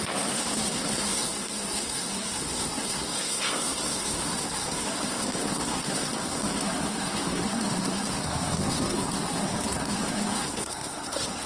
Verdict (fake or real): fake